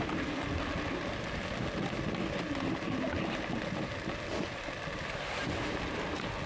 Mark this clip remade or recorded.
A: recorded